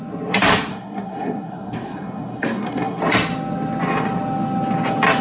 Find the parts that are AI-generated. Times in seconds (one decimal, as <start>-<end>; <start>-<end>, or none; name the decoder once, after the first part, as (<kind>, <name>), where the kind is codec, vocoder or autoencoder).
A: 0.7-3.0 (codec, SNAC)